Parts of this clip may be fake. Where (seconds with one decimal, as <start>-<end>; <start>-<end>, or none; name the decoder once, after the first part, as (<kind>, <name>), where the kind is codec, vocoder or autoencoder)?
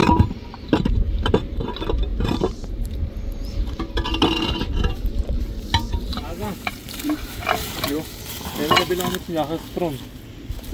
0.0-1.3 (vocoder, BigVGAN v2); 2.1-3.1; 6.1-8.0